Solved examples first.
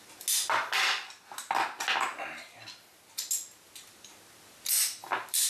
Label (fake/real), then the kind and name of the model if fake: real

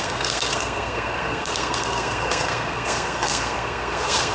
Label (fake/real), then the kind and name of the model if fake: fake, codec, SNAC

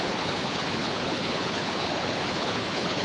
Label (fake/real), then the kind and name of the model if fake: fake, codec, HILCodec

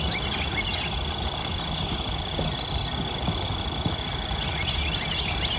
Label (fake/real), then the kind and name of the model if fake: real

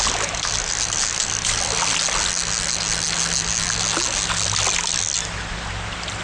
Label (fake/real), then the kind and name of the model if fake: real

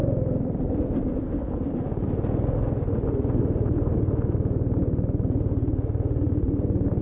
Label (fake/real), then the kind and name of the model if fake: real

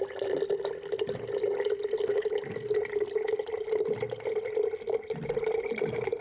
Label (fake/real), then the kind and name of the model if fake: real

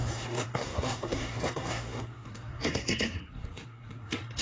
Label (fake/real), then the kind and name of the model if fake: fake, codec, SNAC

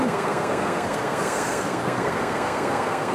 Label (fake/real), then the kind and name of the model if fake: fake, codec, SNAC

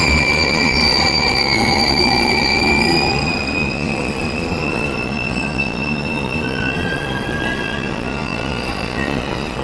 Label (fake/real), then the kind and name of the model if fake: fake, vocoder, Vocos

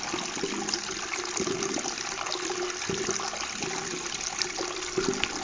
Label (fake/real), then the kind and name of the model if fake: real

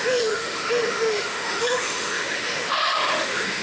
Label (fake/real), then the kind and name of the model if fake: fake, autoencoder, DAC-VAE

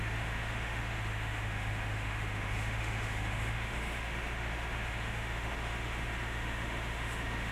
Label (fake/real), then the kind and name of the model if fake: fake, autoencoder, DAC-VAE